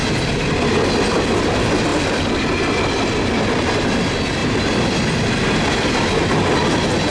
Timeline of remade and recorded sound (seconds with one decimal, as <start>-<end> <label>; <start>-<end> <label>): 0.0-0.5 remade; 0.5-1.9 recorded; 1.9-2.7 remade; 2.7-4.4 recorded; 4.4-7.1 remade

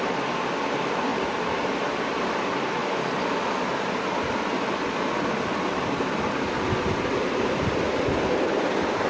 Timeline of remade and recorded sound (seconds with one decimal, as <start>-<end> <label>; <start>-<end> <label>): 0.0-9.1 recorded

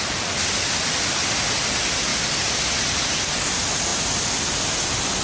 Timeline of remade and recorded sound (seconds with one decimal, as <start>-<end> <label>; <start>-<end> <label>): 0.0-1.1 remade; 1.1-2.1 recorded; 2.1-3.0 remade; 3.0-5.2 recorded

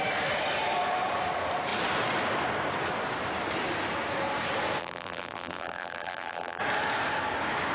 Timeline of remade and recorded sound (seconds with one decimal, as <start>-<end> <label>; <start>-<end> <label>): 0.0-4.8 recorded; 4.8-6.6 remade; 6.6-7.7 recorded

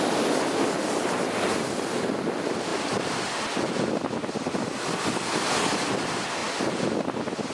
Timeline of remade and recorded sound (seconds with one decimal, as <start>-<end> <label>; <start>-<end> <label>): 0.0-7.5 recorded

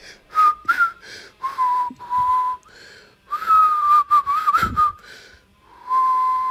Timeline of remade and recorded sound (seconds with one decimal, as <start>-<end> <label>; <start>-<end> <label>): 0.0-3.6 recorded; 3.6-4.6 remade; 4.6-6.5 recorded